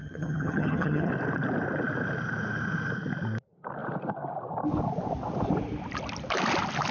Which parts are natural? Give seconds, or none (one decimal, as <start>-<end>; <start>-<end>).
1.1-6.9